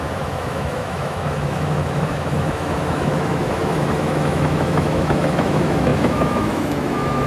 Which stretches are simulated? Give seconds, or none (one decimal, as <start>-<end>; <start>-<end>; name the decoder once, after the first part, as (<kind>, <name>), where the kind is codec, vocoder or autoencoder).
0.0-7.3 (autoencoder, DAC-VAE)